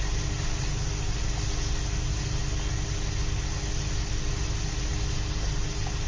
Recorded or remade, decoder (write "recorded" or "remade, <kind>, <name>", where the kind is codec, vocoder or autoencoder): recorded